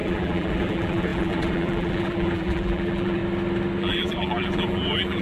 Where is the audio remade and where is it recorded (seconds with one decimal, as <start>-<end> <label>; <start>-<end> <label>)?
0.0-3.2 remade; 3.2-3.8 recorded; 3.8-5.2 remade